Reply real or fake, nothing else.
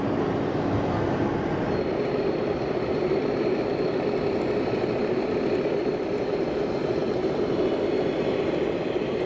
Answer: real